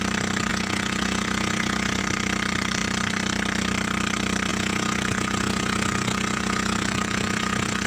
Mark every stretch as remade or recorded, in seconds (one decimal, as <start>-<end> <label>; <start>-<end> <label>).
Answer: 0.0-0.5 recorded; 0.5-2.0 remade; 2.0-4.5 recorded; 4.5-7.9 remade